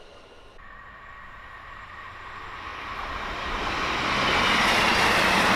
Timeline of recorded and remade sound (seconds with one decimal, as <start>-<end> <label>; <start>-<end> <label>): 0.0-5.6 recorded